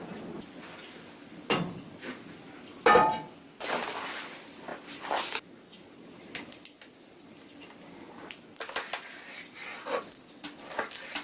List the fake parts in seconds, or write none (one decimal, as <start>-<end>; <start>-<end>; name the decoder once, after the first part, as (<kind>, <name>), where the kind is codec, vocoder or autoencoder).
none